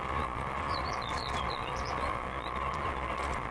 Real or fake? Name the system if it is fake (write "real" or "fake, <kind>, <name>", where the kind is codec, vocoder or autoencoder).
fake, vocoder, Vocos